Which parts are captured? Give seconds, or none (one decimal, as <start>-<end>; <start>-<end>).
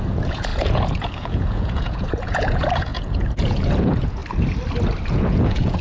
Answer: 4.2-5.1